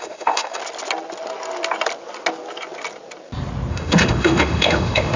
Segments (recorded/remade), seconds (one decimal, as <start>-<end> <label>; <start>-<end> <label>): 0.0-0.6 remade; 0.6-3.7 recorded; 3.7-5.2 remade